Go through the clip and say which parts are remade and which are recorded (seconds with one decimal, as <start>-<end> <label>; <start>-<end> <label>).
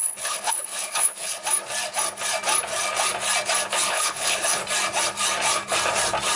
0.0-1.4 remade; 1.4-3.9 recorded; 3.9-4.6 remade; 4.6-6.4 recorded